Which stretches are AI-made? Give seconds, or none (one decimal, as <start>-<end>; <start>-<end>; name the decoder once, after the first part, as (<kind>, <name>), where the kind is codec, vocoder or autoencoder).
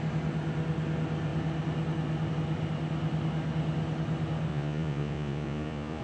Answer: 4.5-6.0 (vocoder, Vocos)